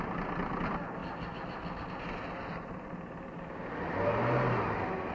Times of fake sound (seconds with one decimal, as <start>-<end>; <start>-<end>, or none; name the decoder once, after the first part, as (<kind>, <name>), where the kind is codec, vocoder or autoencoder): none